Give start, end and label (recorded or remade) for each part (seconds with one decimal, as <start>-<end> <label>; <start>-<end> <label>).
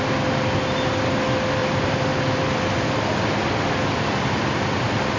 0.0-1.6 recorded; 1.6-4.7 remade; 4.7-5.2 recorded